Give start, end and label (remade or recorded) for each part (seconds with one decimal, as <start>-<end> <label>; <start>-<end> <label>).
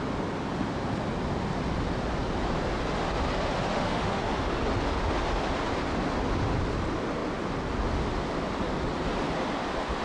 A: 0.0-3.7 recorded; 3.7-4.2 remade; 4.2-10.0 recorded